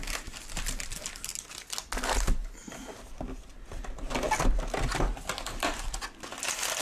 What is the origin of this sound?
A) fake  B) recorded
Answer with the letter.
B